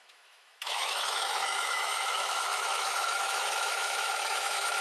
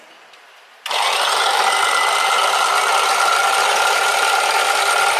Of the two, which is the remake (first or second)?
first